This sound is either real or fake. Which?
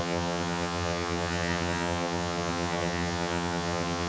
fake